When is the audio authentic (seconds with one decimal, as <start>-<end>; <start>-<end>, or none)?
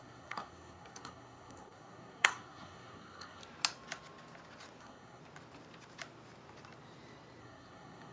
3.4-4.8; 5.2-7.4